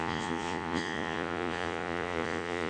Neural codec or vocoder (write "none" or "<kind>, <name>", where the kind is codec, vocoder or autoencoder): vocoder, Vocos